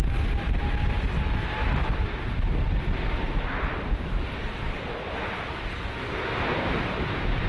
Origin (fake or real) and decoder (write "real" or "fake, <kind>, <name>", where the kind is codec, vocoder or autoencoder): real